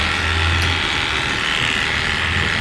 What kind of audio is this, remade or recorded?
recorded